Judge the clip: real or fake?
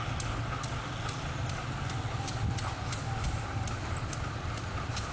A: real